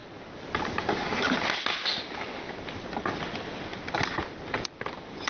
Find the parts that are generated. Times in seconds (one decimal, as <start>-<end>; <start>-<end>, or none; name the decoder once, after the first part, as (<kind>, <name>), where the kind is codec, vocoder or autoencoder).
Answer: 1.9-3.7 (vocoder, BigVGAN v2)